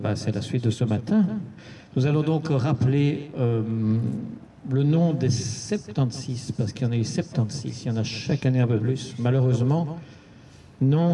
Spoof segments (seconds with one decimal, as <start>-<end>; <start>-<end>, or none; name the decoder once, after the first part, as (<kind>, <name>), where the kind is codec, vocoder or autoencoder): 8.3-8.8 (codec, DAC)